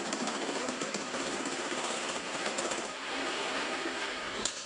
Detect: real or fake fake